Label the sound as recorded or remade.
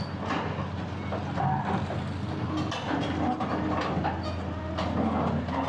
recorded